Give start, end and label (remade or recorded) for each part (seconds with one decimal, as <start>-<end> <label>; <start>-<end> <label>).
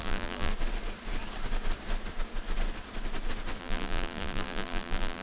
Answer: 0.0-0.5 remade; 0.5-3.6 recorded; 3.6-5.2 remade